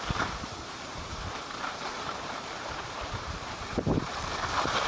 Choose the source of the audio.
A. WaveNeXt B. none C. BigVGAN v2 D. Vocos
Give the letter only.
C